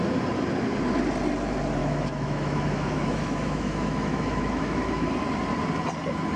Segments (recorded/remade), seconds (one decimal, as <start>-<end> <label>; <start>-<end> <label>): 0.0-1.8 recorded; 1.8-5.1 remade; 5.1-6.4 recorded